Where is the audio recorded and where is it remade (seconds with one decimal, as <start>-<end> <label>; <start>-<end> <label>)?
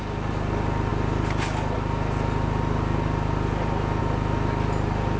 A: 0.0-5.2 recorded